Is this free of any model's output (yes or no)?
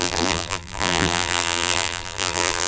no